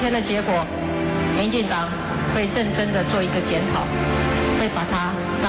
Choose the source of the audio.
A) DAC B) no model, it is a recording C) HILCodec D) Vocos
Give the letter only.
B